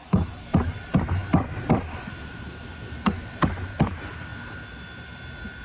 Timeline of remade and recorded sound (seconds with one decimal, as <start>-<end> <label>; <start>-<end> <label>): 0.0-4.3 remade; 4.3-5.6 recorded

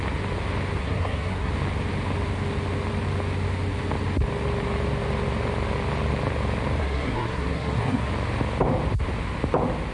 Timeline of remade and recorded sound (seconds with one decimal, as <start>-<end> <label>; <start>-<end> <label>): 0.0-0.8 recorded; 0.8-1.5 remade; 1.5-6.8 recorded; 6.8-8.1 remade; 8.1-9.9 recorded

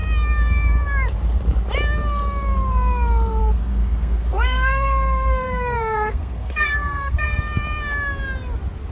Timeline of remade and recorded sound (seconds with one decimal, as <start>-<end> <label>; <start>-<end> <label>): 0.0-3.4 recorded; 3.4-7.4 remade; 7.4-8.9 recorded

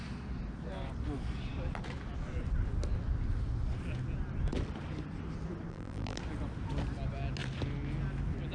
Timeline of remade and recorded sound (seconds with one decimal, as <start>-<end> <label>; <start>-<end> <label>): 0.0-5.7 recorded; 5.7-6.2 remade; 6.2-8.5 recorded

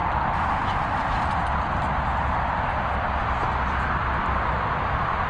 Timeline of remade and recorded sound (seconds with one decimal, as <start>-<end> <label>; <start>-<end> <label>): 0.0-5.3 recorded

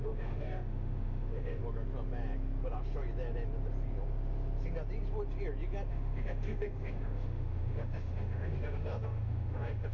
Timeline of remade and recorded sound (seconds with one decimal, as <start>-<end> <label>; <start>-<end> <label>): 0.0-1.6 remade; 1.6-5.9 recorded; 5.9-9.9 remade